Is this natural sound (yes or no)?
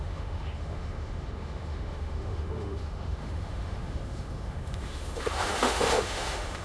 no